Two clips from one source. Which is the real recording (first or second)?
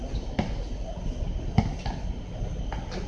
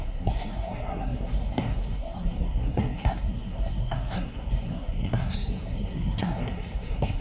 first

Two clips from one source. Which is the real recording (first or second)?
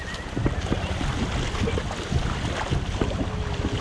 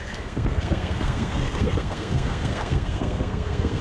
first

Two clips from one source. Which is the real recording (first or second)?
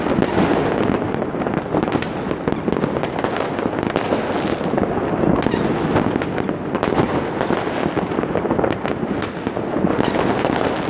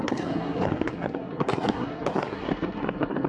first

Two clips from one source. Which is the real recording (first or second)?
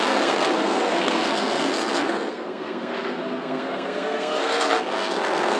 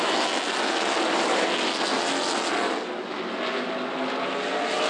second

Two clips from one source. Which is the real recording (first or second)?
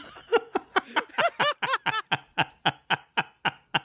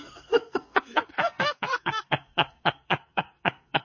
first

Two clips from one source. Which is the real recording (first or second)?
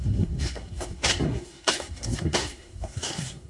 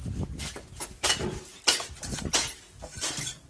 second